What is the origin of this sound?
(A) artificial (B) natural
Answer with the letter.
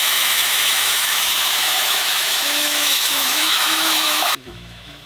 A